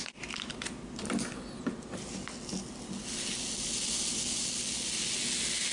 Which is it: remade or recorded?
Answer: recorded